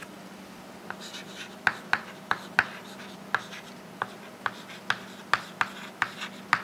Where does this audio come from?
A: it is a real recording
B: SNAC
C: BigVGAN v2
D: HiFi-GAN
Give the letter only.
A